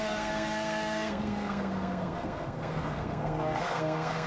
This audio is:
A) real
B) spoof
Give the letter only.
B